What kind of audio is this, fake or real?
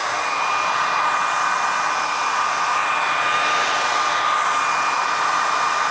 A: real